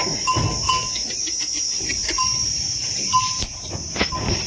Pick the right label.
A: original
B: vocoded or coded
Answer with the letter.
A